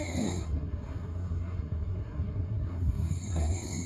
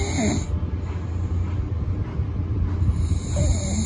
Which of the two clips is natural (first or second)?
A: second